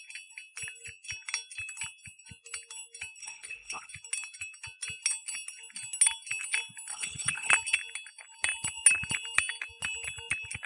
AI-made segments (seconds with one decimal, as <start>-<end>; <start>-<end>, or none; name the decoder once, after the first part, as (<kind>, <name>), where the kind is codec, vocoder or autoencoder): 3.2-3.9 (codec, HILCodec); 6.9-7.5